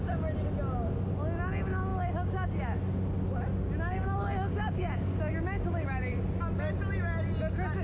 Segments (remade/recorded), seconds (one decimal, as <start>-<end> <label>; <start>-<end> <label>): 0.0-7.8 recorded